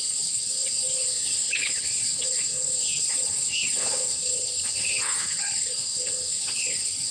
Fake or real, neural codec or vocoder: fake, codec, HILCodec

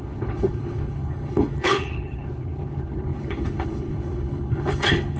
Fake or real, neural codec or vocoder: fake, codec, HILCodec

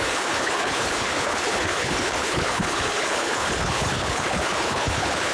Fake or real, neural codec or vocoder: fake, codec, HILCodec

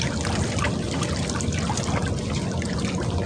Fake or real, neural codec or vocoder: real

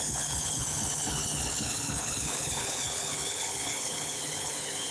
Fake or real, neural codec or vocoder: fake, codec, HILCodec